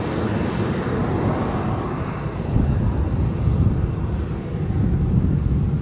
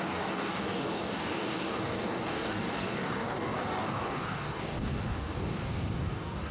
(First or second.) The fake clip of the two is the second